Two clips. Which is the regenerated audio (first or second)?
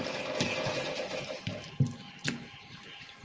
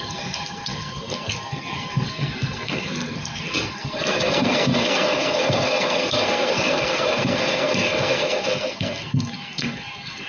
second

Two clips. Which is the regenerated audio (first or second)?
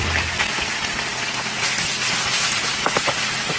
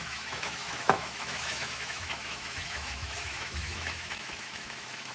second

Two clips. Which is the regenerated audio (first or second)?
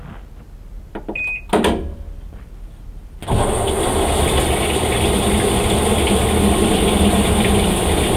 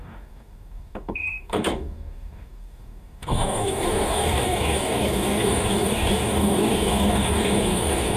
second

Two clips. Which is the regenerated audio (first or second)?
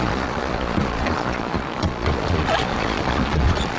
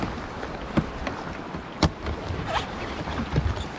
first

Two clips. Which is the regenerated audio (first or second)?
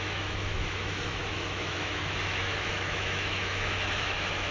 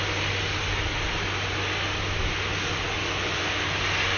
first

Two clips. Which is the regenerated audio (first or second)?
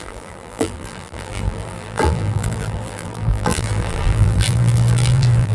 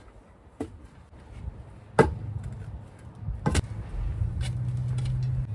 first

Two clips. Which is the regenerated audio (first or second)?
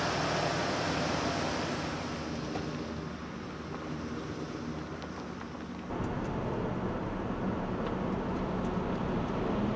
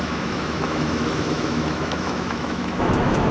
second